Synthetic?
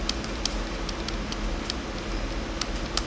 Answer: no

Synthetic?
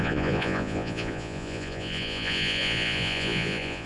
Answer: yes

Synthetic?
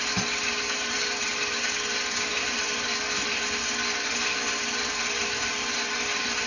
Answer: no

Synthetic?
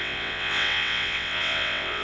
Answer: yes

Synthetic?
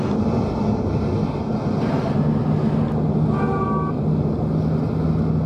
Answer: no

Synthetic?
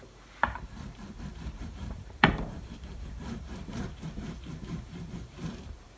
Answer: yes